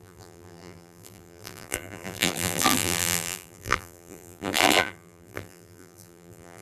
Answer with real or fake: fake